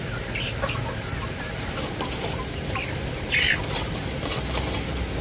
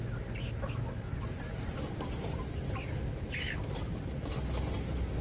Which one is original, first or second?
second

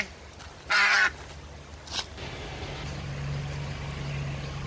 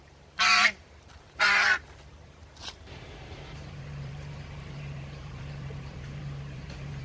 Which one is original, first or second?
first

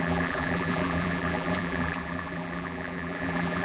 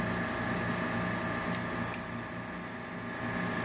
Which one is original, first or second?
second